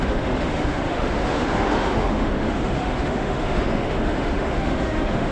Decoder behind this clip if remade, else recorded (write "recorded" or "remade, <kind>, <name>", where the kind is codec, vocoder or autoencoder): remade, autoencoder, DAC-VAE